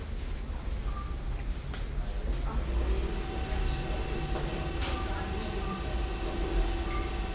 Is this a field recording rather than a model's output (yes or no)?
yes